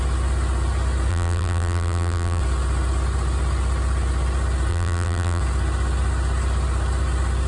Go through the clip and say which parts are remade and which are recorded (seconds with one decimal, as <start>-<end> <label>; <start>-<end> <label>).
0.0-1.1 recorded; 1.1-2.4 remade; 2.4-4.7 recorded; 4.7-5.4 remade; 5.4-7.5 recorded